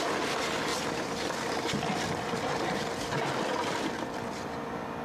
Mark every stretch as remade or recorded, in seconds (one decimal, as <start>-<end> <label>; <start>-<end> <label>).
0.0-5.0 recorded